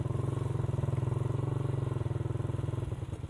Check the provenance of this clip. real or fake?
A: real